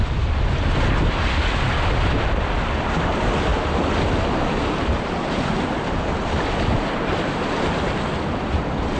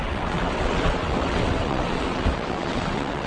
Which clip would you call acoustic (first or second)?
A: first